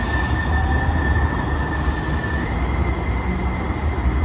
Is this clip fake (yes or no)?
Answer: no